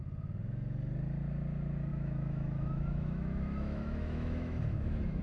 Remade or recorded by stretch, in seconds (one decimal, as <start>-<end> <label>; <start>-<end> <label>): 0.0-1.9 recorded; 1.9-5.2 remade